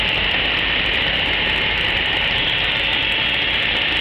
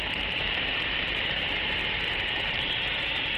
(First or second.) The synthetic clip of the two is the second